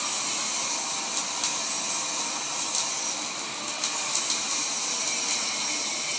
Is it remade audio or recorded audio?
recorded